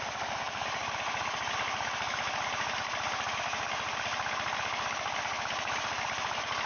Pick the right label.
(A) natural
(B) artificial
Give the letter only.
A